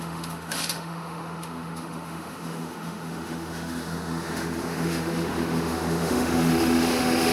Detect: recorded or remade remade